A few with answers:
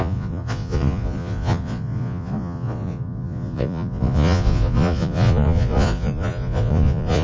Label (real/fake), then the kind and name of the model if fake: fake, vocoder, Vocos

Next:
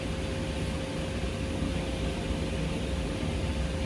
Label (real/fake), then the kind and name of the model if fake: real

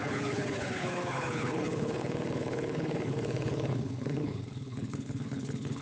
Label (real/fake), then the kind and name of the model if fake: fake, codec, HILCodec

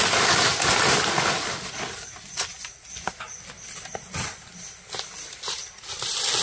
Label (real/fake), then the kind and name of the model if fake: real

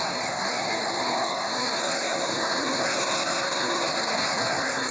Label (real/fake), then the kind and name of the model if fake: fake, codec, SNAC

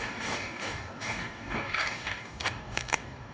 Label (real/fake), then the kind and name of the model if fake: fake, codec, DAC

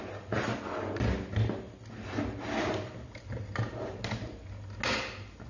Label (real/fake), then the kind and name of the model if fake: real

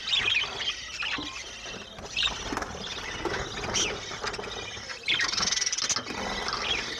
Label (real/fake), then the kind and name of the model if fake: real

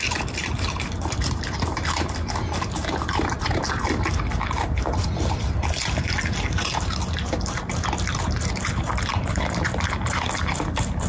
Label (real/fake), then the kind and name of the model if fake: fake, vocoder, BigVGAN v2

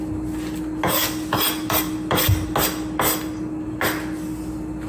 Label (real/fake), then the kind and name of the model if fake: real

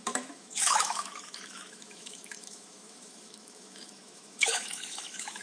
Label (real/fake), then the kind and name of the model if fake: fake, autoencoder, DAC-VAE